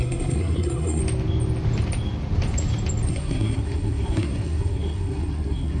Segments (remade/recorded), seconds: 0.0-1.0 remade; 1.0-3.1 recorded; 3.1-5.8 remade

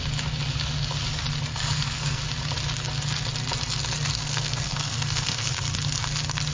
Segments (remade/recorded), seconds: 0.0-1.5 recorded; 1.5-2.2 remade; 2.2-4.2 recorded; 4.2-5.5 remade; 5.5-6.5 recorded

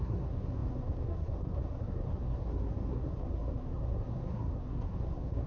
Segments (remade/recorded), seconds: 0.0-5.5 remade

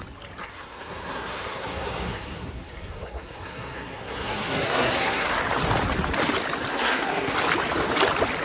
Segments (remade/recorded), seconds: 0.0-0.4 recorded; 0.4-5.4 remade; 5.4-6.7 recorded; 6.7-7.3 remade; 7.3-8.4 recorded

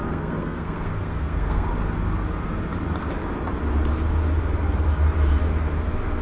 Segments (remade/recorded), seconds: 0.0-1.7 remade; 1.7-6.2 recorded